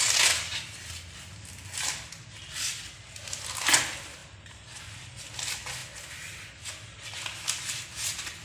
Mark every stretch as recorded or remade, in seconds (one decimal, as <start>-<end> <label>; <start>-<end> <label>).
0.0-8.4 recorded